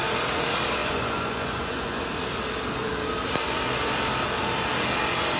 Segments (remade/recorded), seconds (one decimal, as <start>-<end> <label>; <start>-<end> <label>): 0.0-0.8 recorded; 0.8-2.0 remade; 2.0-5.4 recorded